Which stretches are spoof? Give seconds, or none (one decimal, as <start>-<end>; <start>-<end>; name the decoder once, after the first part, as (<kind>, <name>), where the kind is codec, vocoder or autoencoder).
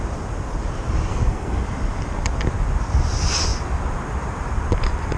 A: 1.1-1.6 (codec, SNAC)